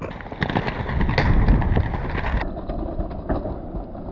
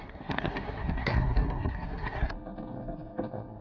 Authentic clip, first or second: first